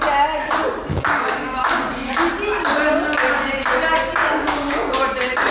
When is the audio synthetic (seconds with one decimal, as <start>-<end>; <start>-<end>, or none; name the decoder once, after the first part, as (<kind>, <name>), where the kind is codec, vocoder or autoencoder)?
0.9-2.3 (codec, DAC); 4.2-4.9